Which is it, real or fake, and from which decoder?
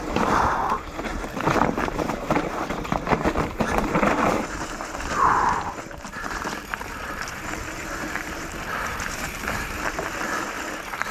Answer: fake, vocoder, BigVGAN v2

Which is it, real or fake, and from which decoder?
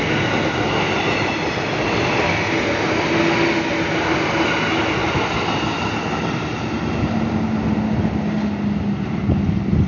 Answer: real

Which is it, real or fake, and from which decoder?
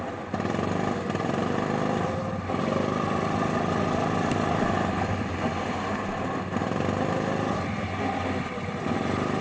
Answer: real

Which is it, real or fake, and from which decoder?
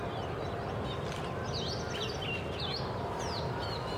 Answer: real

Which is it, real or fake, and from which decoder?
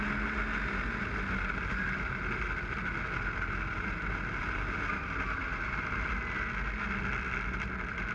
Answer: real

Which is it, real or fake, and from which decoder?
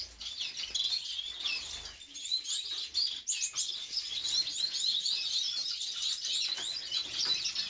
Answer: real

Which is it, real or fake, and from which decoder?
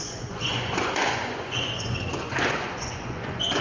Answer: fake, vocoder, Vocos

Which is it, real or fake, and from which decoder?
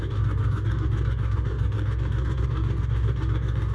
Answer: fake, codec, DAC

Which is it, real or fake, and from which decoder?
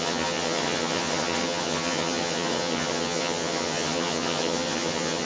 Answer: fake, vocoder, HiFi-GAN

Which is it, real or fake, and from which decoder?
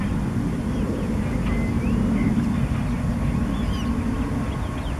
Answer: real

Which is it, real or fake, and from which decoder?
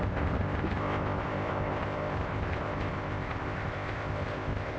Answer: fake, codec, ZipCodec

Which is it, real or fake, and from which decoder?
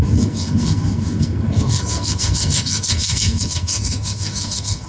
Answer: fake, codec, SNAC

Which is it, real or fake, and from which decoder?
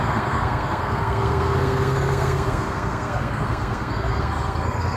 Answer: fake, codec, SNAC